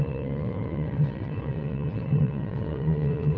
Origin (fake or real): fake